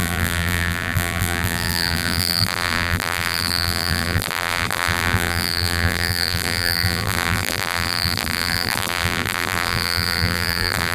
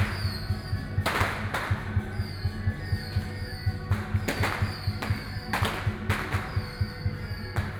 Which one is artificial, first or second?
first